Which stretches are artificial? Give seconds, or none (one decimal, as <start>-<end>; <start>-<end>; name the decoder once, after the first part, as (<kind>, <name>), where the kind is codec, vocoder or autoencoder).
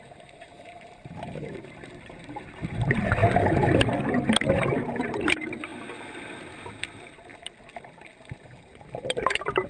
0.0-3.2 (vocoder, BigVGAN v2); 4.5-5.7; 6.7-7.3; 8.6-9.7